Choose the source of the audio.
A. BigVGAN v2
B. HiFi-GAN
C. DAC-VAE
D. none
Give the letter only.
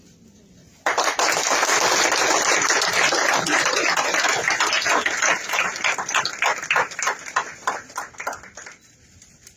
D